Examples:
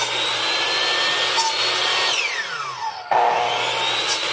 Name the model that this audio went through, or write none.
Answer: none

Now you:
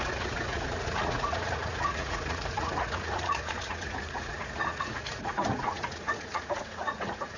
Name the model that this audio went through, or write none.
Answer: vocoder, Vocos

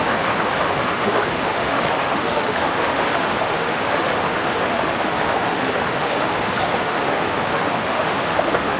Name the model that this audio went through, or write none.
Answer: autoencoder, DAC-VAE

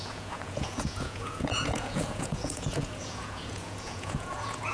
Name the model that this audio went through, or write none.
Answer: vocoder, Vocos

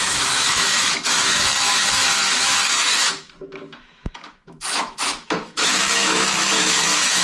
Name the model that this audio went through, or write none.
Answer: autoencoder, DAC-VAE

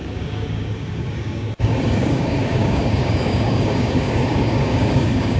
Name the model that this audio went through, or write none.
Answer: codec, DAC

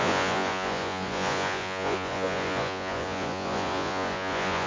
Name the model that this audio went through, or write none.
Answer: vocoder, Vocos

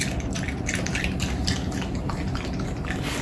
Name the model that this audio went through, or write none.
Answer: none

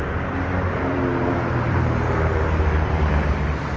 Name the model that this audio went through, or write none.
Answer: vocoder, BigVGAN v2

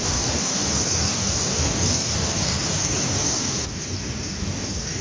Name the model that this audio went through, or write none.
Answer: codec, DAC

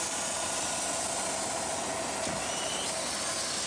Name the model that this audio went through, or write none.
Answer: none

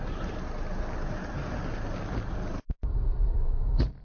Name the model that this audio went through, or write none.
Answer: none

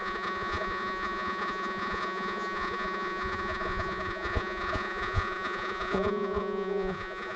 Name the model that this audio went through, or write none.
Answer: vocoder, Vocos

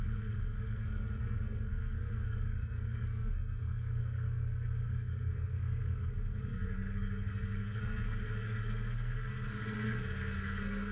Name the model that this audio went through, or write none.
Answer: codec, SNAC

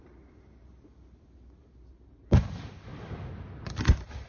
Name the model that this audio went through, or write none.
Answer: none